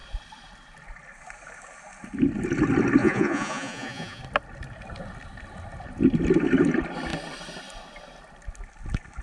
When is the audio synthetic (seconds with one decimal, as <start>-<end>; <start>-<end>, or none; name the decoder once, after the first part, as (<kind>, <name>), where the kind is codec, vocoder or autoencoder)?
3.0-4.2 (vocoder, Vocos)